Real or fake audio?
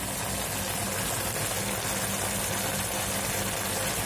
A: real